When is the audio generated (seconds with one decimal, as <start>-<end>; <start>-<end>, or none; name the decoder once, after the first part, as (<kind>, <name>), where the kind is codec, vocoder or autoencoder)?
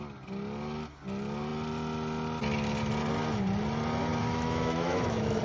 4.1-5.4 (autoencoder, DAC-VAE)